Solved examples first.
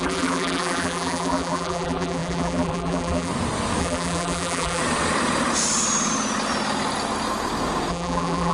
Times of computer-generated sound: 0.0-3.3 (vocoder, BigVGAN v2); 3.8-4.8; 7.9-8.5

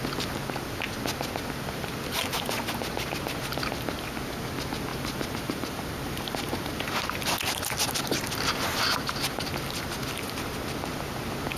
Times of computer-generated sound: 4.9-7.1 (vocoder, BigVGAN v2)

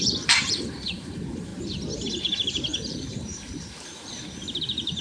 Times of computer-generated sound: 0.0-1.5 (vocoder, BigVGAN v2); 2.2-5.0

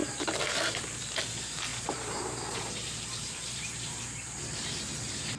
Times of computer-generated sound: 0.0-1.0 (vocoder, BigVGAN v2); 1.7-4.7

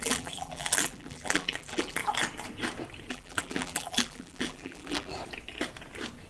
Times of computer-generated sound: 0.0-2.0 (vocoder, BigVGAN v2); 3.1-5.2